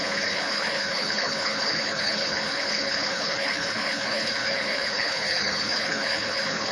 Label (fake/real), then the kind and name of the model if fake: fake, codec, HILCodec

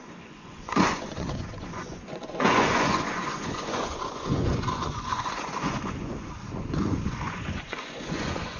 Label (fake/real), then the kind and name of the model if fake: fake, vocoder, Vocos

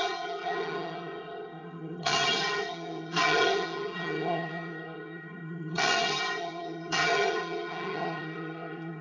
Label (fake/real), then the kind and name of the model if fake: fake, vocoder, HiFi-GAN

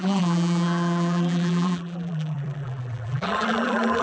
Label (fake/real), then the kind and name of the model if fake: fake, vocoder, BigVGAN v2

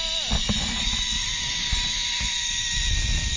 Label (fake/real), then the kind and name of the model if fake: real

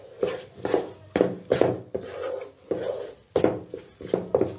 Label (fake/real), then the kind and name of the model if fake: real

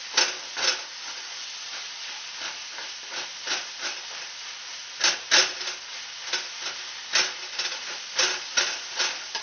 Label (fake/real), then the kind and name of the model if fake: real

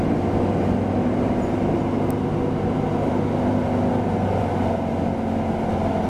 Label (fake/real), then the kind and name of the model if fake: real